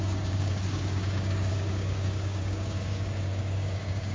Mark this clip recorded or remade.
remade